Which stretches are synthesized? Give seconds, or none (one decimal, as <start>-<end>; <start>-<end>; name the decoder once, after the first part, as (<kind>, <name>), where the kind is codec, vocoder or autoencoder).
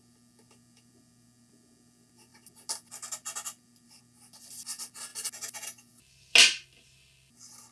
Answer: none